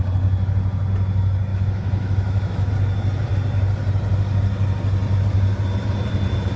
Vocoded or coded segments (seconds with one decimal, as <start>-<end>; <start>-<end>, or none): 1.5-2.7

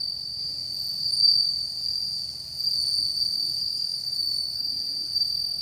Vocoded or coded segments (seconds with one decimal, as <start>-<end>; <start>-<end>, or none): 3.6-4.7

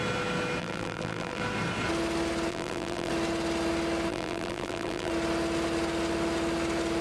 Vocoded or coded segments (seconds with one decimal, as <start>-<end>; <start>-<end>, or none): 0.6-1.4; 2.5-3.1; 4.1-5.1

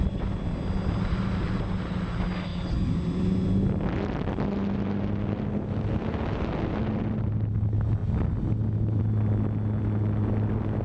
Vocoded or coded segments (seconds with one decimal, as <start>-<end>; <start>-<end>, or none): none

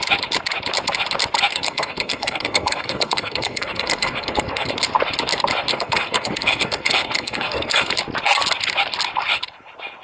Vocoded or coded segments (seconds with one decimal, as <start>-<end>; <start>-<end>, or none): 1.5-4.7; 5.7-7.9

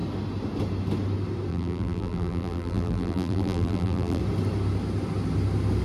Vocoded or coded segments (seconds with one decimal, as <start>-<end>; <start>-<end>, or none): 1.5-4.2